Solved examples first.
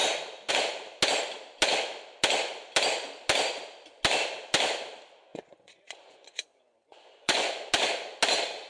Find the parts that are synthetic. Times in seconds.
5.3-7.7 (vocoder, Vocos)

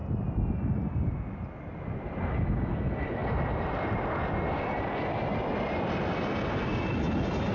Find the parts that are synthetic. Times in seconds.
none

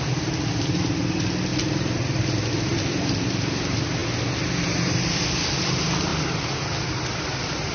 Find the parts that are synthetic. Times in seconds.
0.0-1.5 (vocoder, BigVGAN v2); 2.5-6.1; 7.1-7.7

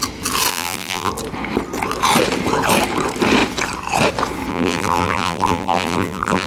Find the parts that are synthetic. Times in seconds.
0.5-1.1 (vocoder, BigVGAN v2); 4.5-6.5

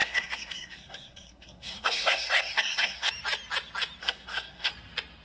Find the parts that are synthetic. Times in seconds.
0.0-3.1 (codec, SNAC); 4.0-4.7

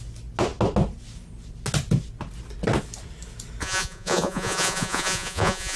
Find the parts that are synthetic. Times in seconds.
3.6-5.8 (vocoder, Vocos)

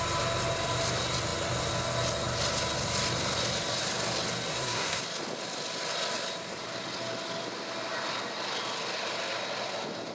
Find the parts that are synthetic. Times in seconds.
4.5-5.0 (codec, SNAC)